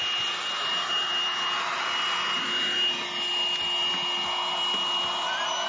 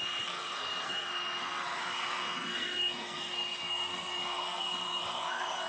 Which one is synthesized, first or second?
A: second